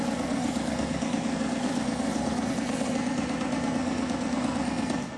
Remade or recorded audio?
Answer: remade